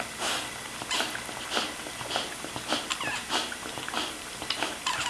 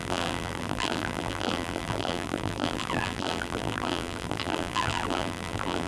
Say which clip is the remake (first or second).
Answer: second